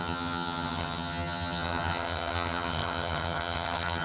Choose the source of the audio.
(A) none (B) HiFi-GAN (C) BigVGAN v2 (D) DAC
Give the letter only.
B